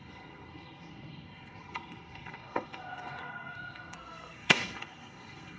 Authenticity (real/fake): fake